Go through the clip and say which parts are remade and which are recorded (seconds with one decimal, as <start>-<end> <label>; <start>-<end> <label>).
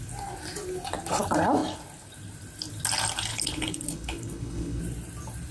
0.0-3.3 recorded; 3.3-4.8 remade; 4.8-5.5 recorded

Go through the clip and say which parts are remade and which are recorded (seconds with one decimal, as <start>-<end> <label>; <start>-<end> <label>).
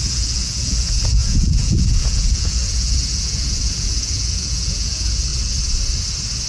0.0-5.3 remade; 5.3-6.5 recorded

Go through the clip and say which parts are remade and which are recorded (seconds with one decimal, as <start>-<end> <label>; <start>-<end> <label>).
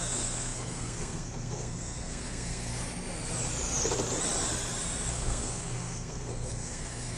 0.0-2.7 remade; 2.7-5.1 recorded; 5.1-7.2 remade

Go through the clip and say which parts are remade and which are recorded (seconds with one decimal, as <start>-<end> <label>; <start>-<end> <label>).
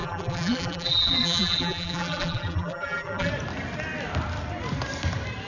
0.0-3.3 remade; 3.3-5.5 recorded